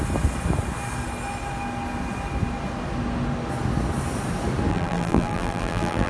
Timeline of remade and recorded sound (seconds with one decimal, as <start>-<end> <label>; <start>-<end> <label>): 0.0-4.7 recorded; 4.7-6.1 remade